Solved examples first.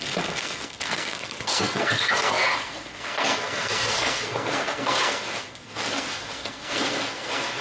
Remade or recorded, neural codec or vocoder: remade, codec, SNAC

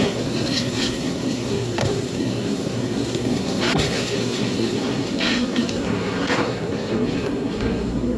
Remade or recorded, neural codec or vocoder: remade, codec, SNAC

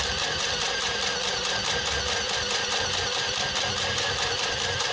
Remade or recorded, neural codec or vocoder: recorded